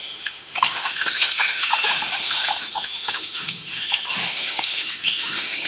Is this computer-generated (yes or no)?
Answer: yes